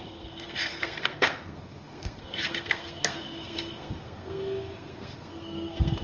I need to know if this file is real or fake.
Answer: fake